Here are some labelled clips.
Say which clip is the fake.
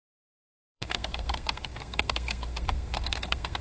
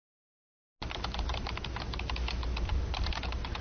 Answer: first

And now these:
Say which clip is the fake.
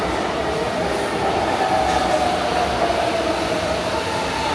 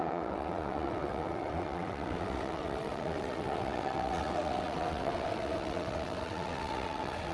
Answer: second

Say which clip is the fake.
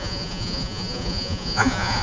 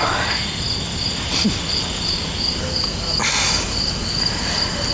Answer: first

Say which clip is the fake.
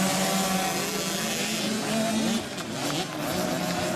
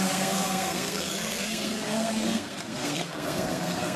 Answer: second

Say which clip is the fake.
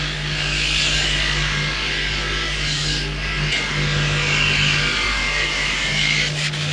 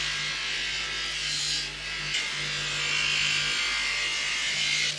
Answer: first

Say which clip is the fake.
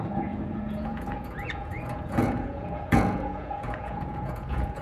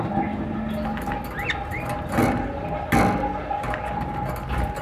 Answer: first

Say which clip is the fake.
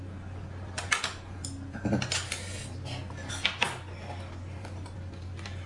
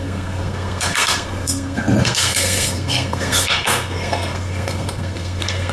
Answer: second